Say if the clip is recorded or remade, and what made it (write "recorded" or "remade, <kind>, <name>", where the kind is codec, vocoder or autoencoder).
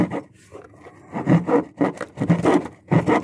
recorded